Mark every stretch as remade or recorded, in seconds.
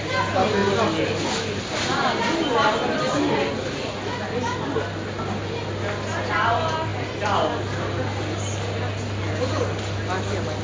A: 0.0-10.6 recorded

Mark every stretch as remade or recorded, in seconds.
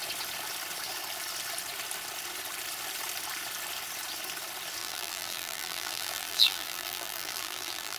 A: 0.0-4.8 recorded; 4.8-8.0 remade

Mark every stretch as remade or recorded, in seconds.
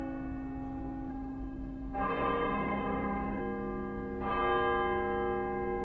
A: 0.0-1.1 recorded; 1.1-3.4 remade; 3.4-5.8 recorded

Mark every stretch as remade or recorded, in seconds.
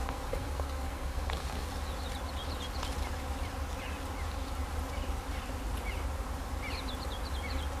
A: 0.0-1.7 remade; 1.7-7.8 recorded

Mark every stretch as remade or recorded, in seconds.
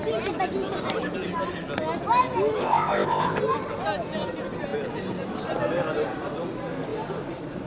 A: 0.0-2.6 recorded; 2.6-3.4 remade; 3.4-7.7 recorded